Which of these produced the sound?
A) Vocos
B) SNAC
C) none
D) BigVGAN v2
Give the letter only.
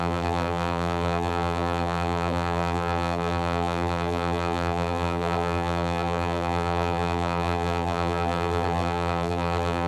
D